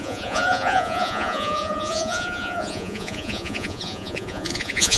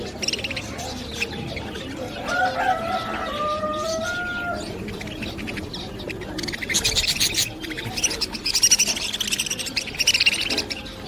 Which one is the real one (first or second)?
second